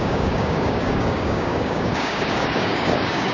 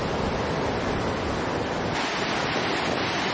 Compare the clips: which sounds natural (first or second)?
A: second